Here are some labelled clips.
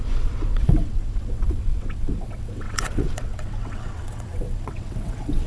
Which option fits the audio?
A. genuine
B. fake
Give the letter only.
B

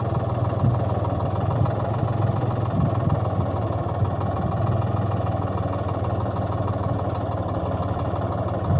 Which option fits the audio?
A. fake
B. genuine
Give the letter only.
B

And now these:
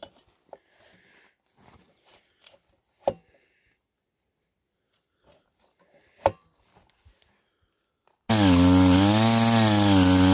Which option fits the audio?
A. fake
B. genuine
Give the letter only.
B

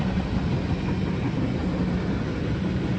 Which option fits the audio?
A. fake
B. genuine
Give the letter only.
B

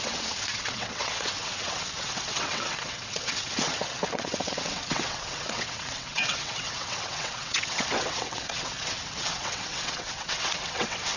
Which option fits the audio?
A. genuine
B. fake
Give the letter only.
B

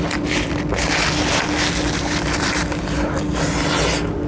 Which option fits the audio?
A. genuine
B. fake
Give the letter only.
A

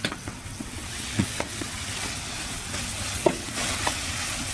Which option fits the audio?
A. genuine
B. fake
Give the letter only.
B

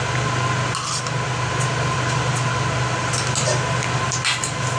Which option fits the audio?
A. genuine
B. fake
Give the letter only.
A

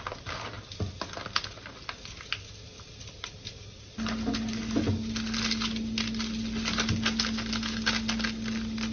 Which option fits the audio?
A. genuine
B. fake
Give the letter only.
A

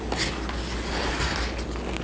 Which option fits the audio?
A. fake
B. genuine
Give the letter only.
B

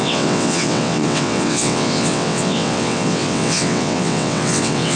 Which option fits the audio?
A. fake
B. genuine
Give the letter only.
A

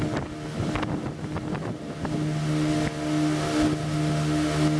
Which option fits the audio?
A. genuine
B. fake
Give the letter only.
A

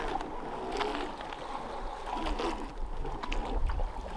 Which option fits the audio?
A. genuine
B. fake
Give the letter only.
A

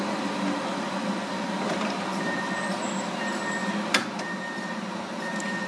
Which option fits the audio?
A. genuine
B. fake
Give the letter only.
A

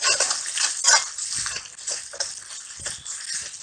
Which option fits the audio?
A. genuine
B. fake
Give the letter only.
A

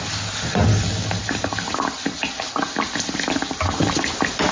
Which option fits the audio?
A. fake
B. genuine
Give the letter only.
B